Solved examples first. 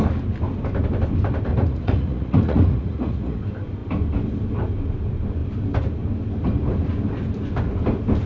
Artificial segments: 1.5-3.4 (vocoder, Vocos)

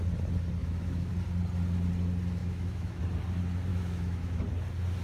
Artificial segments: 0.6-1.1 (autoencoder, DAC-VAE); 2.4-3.0; 3.7-4.4

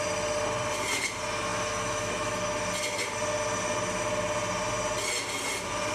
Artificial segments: 1.5-2.4 (autoencoder, DAC-VAE)

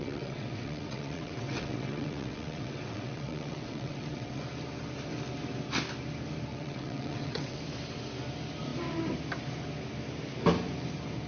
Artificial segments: 0.0-4.4 (vocoder, WaveNeXt); 6.5-7.6

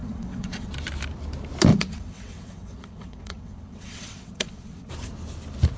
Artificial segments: 0.0-0.7 (vocoder, WaveNeXt); 1.7-4.9

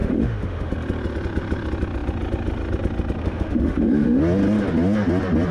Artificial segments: 0.0-0.7 (autoencoder, DAC-VAE); 3.2-4.2

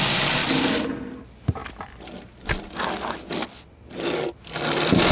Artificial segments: none